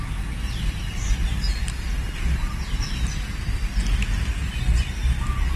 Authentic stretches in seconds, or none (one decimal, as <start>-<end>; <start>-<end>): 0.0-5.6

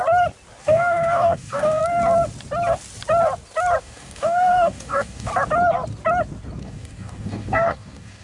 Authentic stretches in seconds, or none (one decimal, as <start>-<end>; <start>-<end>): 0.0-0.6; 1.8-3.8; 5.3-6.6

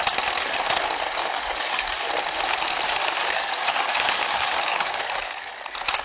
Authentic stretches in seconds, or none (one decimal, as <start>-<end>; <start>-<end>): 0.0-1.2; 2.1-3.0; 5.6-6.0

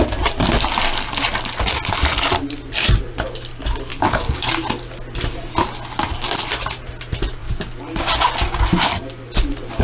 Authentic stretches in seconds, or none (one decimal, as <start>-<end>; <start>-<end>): 0.0-3.9; 4.5-9.8

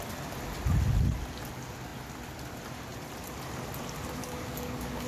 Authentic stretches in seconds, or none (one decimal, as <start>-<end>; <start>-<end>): 0.0-4.2

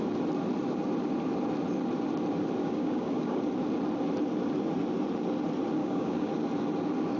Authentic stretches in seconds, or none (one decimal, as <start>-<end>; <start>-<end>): 0.0-2.6; 3.4-5.8; 6.3-7.2